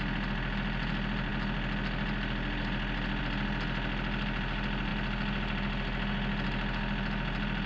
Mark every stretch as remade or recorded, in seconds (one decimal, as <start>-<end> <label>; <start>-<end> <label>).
0.0-7.7 recorded